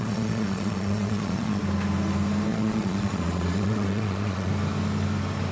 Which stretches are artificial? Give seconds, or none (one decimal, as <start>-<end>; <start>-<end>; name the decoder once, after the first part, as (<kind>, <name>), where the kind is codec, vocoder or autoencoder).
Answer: 0.0-1.6 (vocoder, Vocos); 2.5-4.5